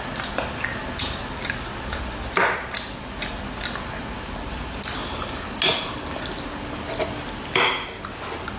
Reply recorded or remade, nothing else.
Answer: recorded